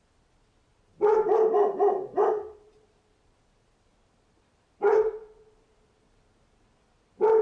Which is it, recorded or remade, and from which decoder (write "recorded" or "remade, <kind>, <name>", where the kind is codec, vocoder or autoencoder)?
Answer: recorded